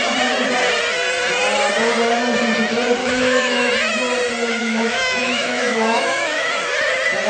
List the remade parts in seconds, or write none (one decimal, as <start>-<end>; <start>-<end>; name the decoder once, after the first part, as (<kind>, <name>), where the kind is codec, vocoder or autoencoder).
3.0-3.7 (autoencoder, DAC-VAE); 4.6-6.5

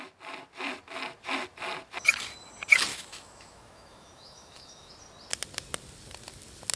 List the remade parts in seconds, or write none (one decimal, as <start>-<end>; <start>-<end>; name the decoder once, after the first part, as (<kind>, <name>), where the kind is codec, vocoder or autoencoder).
2.9-4.9 (autoencoder, DAC-VAE)

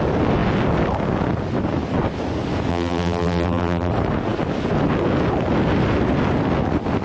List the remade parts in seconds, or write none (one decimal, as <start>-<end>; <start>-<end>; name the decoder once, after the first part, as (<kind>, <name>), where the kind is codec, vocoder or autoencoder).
2.7-3.9 (vocoder, BigVGAN v2)

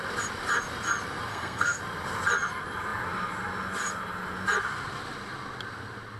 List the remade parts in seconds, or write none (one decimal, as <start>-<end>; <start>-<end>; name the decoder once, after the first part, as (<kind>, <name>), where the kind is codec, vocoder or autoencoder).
1.3-1.8 (codec, SNAC)